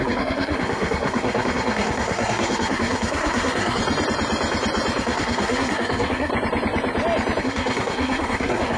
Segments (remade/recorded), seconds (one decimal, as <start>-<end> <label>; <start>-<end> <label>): 0.0-3.8 remade; 3.8-5.0 recorded; 5.0-6.3 remade; 6.3-7.4 recorded; 7.4-8.8 remade